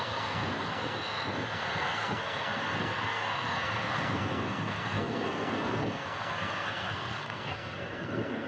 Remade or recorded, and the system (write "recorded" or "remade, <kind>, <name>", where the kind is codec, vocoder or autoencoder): remade, codec, SNAC